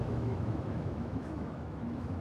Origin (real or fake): fake